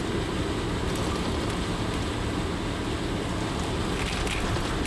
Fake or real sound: real